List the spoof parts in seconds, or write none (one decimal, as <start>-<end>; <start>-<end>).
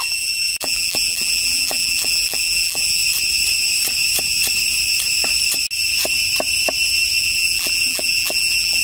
0.0-3.0; 7.2-8.8